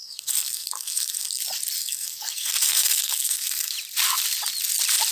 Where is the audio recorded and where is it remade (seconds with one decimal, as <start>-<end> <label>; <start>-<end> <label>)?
0.0-1.4 remade; 1.4-1.8 recorded; 1.8-3.7 remade; 3.7-5.1 recorded